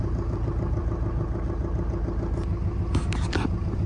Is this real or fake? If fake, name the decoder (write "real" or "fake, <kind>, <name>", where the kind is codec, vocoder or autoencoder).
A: real